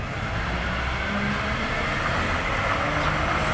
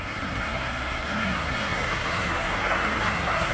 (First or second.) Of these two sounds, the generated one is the second